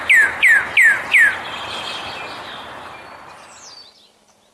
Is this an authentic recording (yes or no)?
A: yes